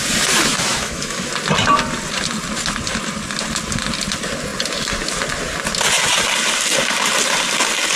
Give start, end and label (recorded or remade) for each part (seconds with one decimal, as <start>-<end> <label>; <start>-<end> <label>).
0.0-0.5 recorded; 0.5-1.3 remade; 1.3-8.0 recorded